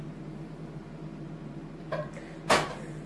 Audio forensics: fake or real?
real